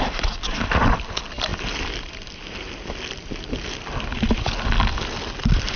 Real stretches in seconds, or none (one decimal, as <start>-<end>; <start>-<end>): 0.0-5.8